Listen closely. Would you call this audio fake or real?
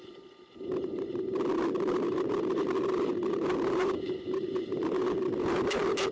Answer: fake